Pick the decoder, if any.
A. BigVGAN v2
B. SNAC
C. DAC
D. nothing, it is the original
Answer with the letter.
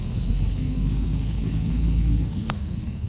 B